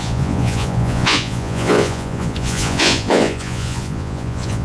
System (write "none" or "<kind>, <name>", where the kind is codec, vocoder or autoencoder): vocoder, Vocos